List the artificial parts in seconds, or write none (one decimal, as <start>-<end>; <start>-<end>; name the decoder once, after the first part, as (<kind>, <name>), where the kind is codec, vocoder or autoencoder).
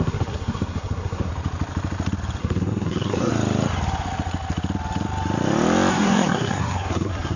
0.0-1.3 (codec, SNAC); 2.4-3.3; 5.9-7.4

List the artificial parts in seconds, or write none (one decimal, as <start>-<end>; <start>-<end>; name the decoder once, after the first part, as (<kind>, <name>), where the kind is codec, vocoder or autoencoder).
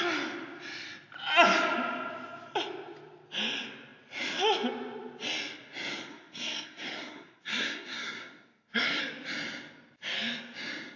6.1-9.0 (codec, SNAC)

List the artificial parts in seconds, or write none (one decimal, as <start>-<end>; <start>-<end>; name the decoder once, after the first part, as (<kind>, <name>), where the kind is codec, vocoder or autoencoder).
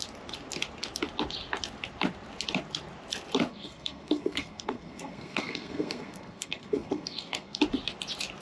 3.5-7.6 (codec, SNAC)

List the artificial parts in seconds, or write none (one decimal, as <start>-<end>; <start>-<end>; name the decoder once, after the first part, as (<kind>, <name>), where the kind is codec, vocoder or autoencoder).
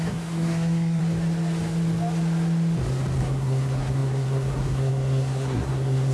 0.0-1.0 (codec, SNAC); 3.2-6.1